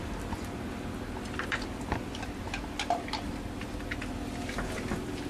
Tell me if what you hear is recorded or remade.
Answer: recorded